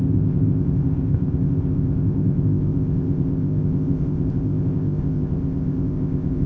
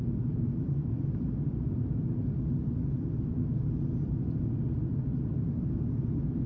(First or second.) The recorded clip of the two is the second